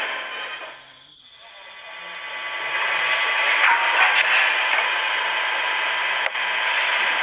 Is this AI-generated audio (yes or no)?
no